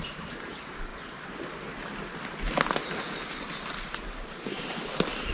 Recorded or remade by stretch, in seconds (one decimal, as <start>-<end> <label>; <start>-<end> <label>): 0.0-0.9 remade; 0.9-3.6 recorded; 3.6-5.3 remade